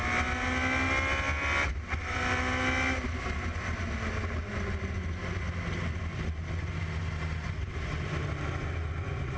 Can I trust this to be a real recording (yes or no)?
yes